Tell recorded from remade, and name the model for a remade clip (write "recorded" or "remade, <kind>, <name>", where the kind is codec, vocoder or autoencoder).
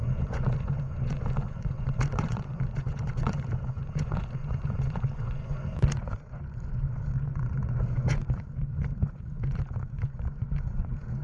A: remade, vocoder, Vocos